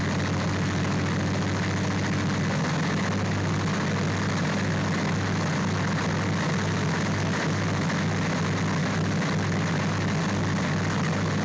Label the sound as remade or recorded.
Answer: recorded